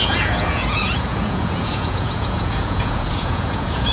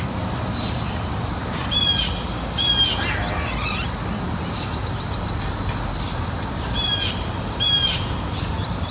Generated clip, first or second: first